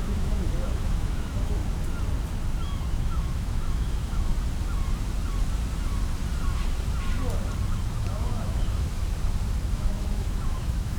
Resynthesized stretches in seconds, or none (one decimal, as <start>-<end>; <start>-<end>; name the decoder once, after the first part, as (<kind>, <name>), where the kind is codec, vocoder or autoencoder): 0.0-1.6 (autoencoder, DAC-VAE); 2.9-4.3; 7.9-9.0; 9.7-11.0